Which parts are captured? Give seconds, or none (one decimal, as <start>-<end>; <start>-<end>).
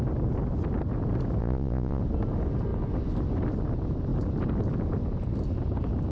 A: 0.0-1.4; 2.0-6.1